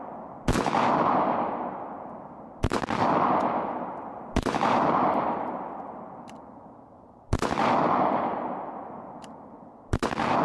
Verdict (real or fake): real